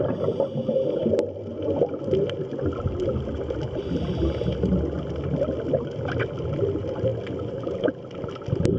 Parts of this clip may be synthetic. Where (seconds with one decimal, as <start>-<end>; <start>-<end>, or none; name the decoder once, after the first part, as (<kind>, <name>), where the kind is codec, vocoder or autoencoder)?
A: none